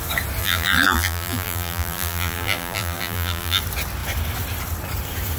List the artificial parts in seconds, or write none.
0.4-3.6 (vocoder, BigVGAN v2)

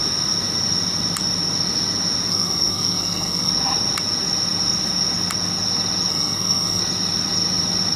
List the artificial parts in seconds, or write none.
2.3-3.5 (codec, SNAC); 6.1-6.8

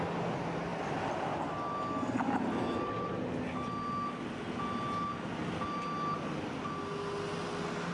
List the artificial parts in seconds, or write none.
none

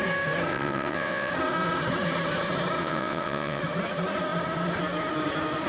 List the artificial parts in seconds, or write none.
0.5-1.3 (vocoder, WaveNeXt); 2.8-3.6

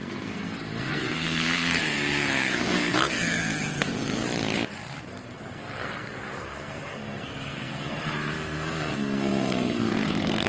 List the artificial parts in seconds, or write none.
0.0-4.2 (codec, SNAC); 5.0-10.5

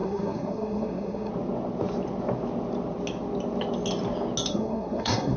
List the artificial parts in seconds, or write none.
0.0-1.3 (codec, SNAC); 4.5-5.4

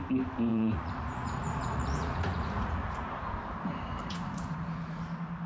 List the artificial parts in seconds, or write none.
0.5-3.3 (vocoder, Vocos); 4.0-5.0

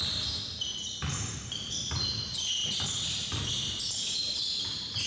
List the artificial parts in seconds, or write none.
none